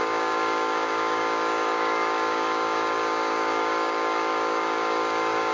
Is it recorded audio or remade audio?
remade